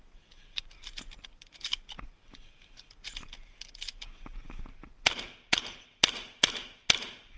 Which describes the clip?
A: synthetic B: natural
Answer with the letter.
B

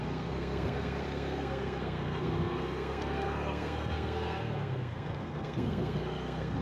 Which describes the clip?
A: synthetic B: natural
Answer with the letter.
A